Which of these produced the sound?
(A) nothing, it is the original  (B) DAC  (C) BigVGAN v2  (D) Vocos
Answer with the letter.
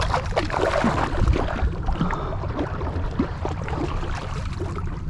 C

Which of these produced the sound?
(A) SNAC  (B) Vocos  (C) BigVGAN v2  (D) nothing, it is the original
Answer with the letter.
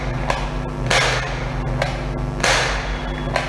D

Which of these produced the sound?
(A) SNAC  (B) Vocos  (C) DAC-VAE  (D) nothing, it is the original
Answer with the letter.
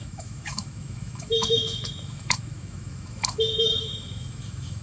C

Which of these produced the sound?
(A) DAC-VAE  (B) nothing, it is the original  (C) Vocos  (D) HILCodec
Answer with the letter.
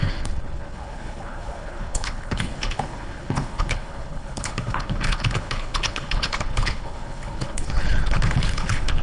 D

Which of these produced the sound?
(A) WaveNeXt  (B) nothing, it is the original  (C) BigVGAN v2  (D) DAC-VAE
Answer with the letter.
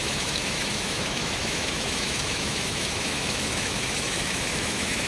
D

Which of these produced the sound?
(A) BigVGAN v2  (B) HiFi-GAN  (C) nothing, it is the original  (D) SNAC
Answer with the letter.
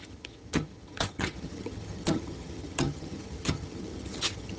B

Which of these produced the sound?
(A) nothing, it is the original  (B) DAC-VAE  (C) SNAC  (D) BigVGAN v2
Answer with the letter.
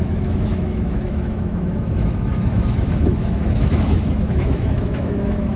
B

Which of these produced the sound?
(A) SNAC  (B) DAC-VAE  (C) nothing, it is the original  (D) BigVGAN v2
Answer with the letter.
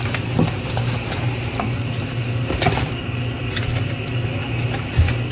C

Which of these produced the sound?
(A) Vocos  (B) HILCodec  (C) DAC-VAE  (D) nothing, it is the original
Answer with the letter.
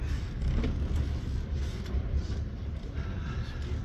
D